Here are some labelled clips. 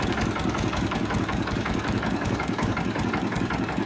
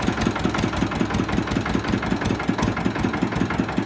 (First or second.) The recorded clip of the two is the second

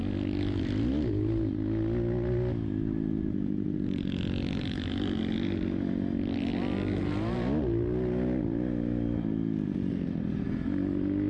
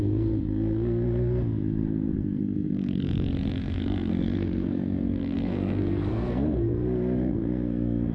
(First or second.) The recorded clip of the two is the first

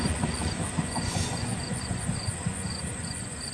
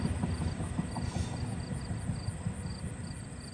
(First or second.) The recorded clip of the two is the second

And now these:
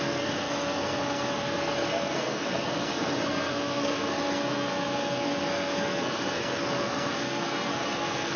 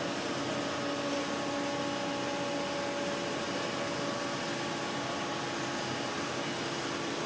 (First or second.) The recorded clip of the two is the second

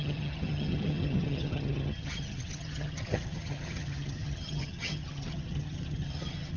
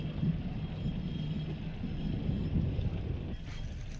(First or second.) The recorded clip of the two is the second